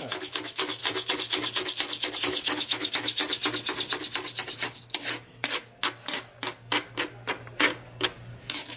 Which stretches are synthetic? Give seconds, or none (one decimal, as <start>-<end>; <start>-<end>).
0.0-0.8; 2.2-3.2; 8.4-8.8